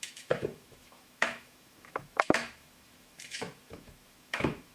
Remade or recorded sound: remade